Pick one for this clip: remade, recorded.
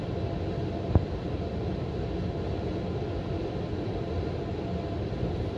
recorded